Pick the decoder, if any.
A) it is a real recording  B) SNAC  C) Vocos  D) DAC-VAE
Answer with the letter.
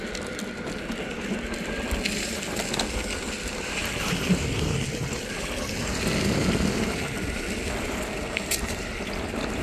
A